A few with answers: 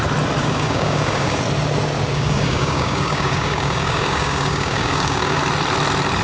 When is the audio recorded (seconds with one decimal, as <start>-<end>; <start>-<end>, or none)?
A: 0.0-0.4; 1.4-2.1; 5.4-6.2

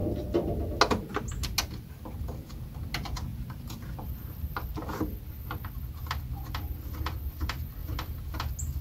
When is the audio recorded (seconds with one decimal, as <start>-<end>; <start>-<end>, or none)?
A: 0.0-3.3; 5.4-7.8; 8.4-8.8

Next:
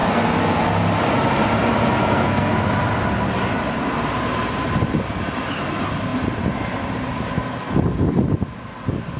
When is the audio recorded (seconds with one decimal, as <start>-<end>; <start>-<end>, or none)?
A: 0.6-2.0; 2.5-9.2

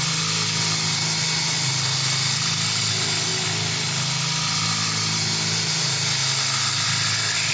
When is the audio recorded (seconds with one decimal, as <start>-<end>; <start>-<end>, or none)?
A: 0.0-7.5